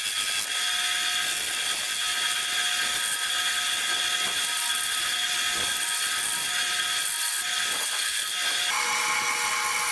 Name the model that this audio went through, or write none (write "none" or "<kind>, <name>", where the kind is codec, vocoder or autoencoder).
none